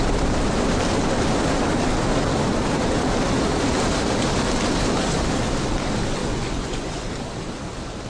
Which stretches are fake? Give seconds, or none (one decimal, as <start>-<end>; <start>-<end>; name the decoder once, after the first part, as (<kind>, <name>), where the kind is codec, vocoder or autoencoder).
6.2-7.1 (vocoder, Vocos)